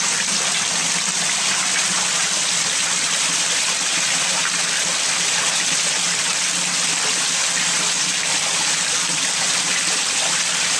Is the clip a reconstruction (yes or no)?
no